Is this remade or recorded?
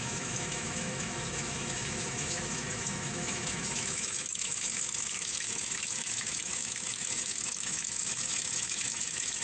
remade